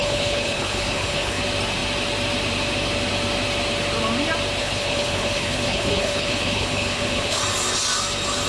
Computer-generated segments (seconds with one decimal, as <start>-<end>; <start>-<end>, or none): 0.0-1.4; 4.6-7.4